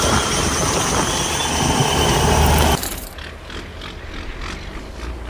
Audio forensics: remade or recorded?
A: recorded